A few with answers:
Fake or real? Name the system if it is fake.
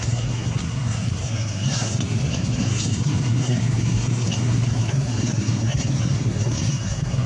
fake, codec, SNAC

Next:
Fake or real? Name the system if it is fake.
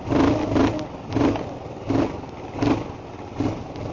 real